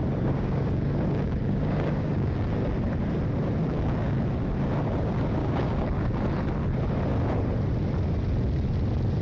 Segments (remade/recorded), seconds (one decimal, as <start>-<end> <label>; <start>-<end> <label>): 0.0-2.8 remade; 2.8-3.6 recorded; 3.6-4.2 remade; 4.2-5.4 recorded; 5.4-6.2 remade; 6.2-9.2 recorded